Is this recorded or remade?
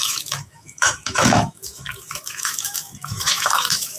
remade